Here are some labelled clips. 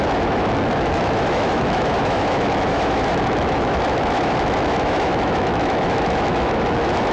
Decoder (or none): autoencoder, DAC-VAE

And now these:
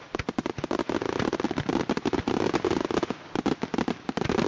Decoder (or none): none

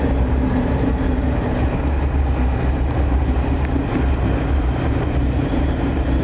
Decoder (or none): vocoder, BigVGAN v2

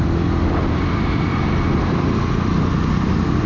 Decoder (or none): none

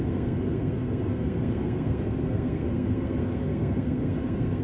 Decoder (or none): codec, SNAC